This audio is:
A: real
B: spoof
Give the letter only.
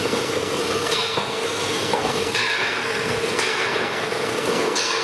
B